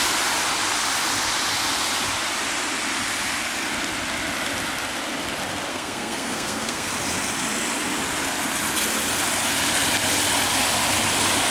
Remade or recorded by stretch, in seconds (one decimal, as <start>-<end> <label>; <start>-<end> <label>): 0.0-5.7 recorded; 5.7-6.9 remade; 6.9-11.5 recorded